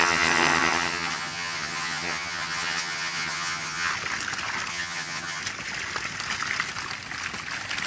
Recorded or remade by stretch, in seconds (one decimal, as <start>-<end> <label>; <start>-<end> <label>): 0.0-3.9 remade; 3.9-4.7 recorded; 4.7-5.4 remade; 5.4-7.9 recorded